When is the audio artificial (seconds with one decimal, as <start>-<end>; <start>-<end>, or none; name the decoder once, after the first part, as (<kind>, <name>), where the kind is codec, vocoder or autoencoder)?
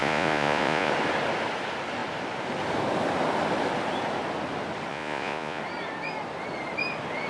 0.0-0.9 (vocoder, Vocos); 4.9-5.6